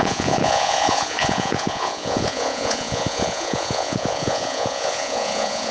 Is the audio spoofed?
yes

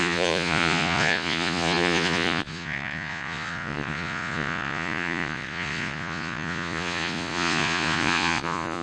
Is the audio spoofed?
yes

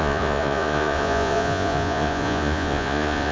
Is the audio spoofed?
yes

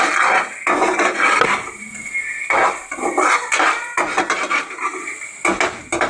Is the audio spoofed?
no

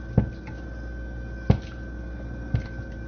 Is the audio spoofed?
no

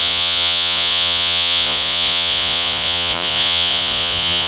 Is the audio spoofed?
yes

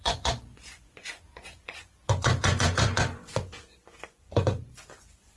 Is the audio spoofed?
yes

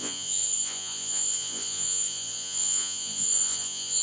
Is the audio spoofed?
yes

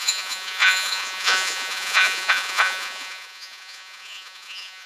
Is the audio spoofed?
yes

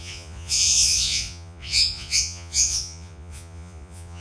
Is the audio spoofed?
yes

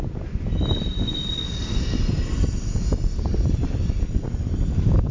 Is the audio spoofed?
no